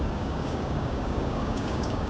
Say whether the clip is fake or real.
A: fake